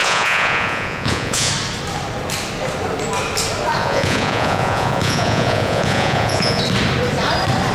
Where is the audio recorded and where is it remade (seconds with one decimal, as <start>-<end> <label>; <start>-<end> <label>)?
0.0-1.5 remade; 1.5-3.8 recorded; 3.8-6.6 remade; 6.6-7.7 recorded

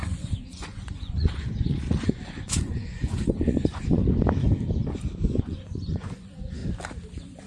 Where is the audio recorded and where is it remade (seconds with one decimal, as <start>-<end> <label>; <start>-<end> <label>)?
0.0-4.0 remade; 4.0-5.4 recorded; 5.4-6.6 remade; 6.6-7.1 recorded; 7.1-7.5 remade

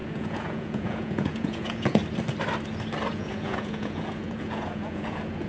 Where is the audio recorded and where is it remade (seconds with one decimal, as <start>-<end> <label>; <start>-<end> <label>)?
0.0-2.0 remade; 2.0-3.1 recorded; 3.1-5.5 remade

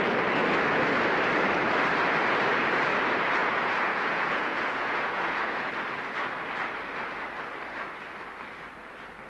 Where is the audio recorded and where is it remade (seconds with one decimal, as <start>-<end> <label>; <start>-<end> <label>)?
0.0-3.4 recorded; 3.4-5.7 remade; 5.7-9.3 recorded

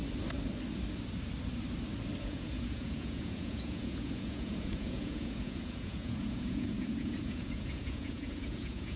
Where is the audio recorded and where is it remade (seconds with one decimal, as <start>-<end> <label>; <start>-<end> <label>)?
0.0-2.2 recorded; 2.2-9.0 remade

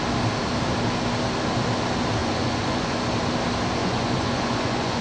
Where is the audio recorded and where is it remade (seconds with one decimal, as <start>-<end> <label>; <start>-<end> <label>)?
0.0-2.2 recorded; 2.2-3.0 remade; 3.0-3.8 recorded; 3.8-5.0 remade